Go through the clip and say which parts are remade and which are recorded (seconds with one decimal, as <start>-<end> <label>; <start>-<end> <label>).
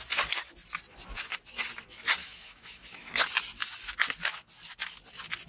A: 0.0-2.2 recorded; 2.2-3.1 remade; 3.1-5.5 recorded